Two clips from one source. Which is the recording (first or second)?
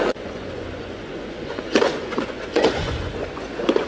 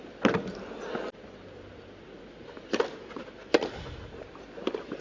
second